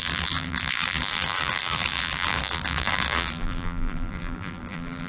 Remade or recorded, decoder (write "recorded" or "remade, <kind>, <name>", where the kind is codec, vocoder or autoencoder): remade, vocoder, BigVGAN v2